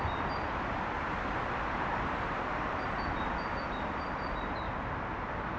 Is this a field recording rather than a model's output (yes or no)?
yes